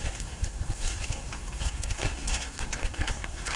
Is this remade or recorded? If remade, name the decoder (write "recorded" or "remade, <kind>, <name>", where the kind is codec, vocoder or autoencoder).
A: remade, codec, SNAC